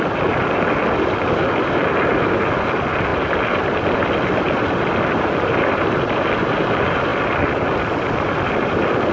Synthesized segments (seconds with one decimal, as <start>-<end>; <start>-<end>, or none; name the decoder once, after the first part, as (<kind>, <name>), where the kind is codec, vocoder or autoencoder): none